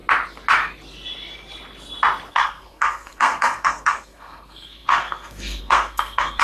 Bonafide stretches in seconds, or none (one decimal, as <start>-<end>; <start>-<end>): 0.0-2.3